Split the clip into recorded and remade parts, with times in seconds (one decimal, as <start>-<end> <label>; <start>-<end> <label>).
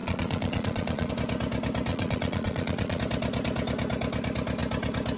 0.0-1.1 remade; 1.1-1.9 recorded; 1.9-3.0 remade; 3.0-5.2 recorded